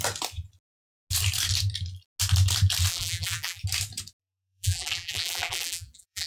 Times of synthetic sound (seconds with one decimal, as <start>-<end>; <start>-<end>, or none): 2.9-3.6; 4.2-6.3